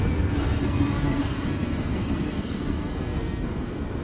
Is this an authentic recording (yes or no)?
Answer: no